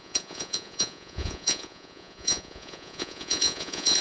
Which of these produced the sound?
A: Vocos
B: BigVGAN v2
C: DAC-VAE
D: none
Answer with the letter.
A